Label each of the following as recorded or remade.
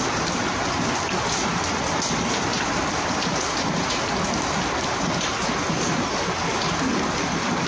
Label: recorded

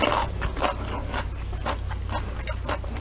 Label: recorded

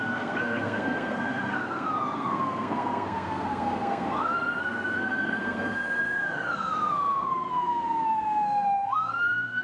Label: remade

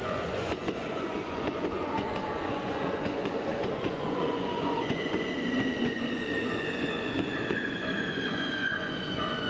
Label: remade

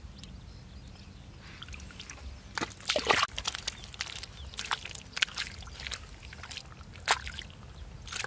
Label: recorded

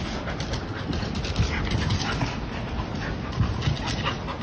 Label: recorded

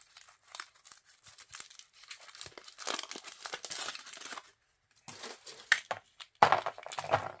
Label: recorded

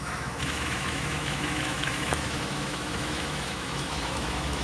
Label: remade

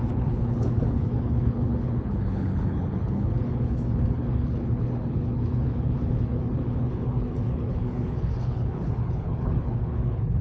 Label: remade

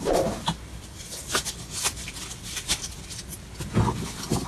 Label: recorded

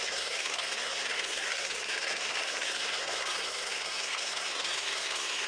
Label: remade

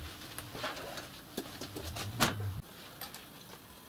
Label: recorded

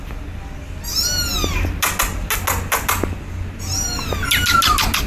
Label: recorded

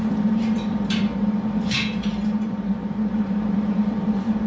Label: remade